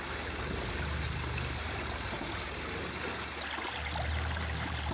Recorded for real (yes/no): yes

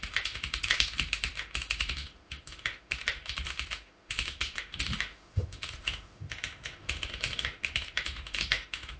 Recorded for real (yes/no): no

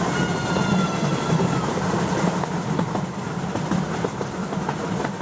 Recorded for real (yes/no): no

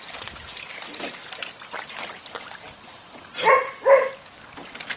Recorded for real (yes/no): yes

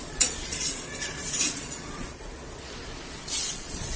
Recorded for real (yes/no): no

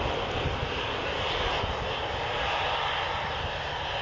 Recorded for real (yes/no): yes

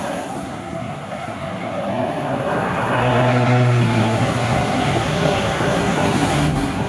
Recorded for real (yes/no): no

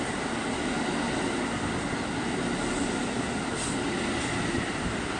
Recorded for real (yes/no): yes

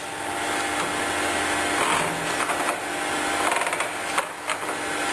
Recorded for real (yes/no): yes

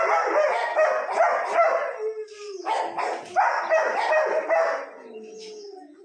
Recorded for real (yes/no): yes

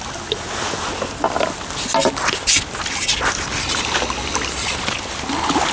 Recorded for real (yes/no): yes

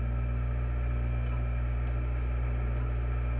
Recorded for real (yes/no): yes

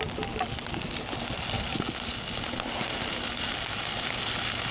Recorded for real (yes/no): yes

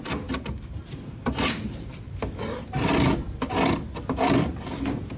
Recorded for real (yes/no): yes